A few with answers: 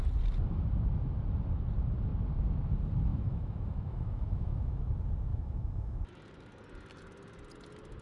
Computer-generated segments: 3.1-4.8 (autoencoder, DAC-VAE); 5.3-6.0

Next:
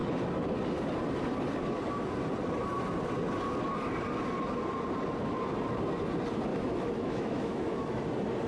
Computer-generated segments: 6.5-8.0 (autoencoder, DAC-VAE)

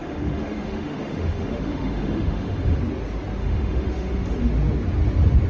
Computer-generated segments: 0.0-2.8 (autoencoder, DAC-VAE); 3.4-4.5